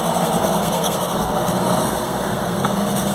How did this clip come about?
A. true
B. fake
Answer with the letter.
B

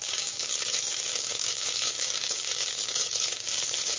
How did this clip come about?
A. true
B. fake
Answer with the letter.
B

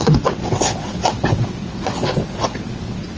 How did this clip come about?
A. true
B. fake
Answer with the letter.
B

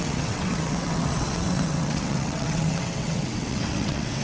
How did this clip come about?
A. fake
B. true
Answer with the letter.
A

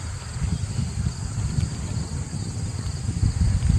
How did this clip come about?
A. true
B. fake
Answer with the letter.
A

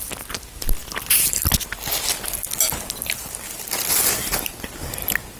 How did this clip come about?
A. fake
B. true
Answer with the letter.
B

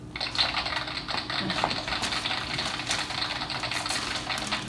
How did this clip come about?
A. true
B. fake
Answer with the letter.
A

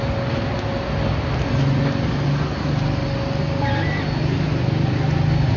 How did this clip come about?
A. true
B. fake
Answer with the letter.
A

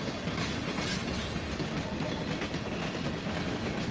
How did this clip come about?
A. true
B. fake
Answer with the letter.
A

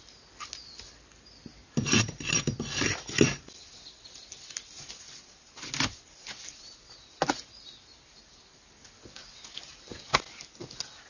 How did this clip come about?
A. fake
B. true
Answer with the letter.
B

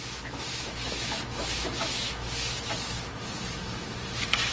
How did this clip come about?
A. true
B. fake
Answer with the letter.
B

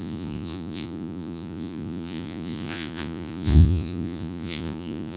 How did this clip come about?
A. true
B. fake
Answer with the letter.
B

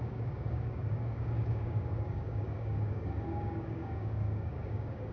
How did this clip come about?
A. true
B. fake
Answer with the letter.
B